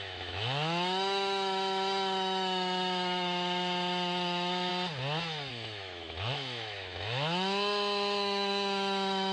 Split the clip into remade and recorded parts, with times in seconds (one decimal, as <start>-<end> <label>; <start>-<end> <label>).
0.0-4.7 remade; 4.7-5.5 recorded; 5.5-9.3 remade